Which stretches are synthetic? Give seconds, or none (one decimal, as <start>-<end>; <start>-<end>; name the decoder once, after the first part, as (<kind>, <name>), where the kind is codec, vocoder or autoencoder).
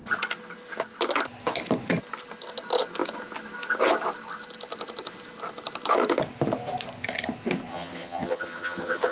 7.7-9.1 (vocoder, HiFi-GAN)